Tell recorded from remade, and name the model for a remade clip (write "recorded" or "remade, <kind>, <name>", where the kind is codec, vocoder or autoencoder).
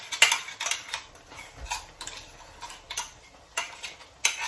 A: recorded